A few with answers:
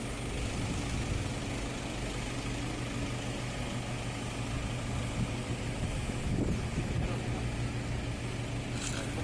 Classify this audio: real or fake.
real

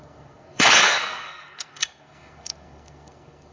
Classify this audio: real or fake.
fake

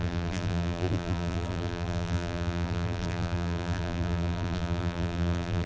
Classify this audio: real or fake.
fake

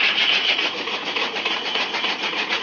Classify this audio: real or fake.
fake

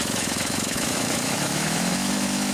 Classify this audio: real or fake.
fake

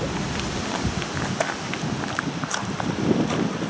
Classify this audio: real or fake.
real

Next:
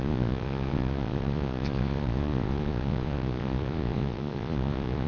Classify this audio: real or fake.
fake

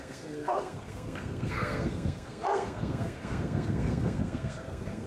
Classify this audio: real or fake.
fake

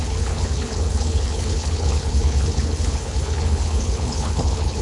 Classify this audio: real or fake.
fake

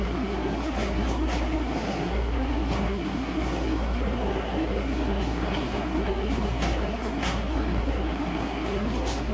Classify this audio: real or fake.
fake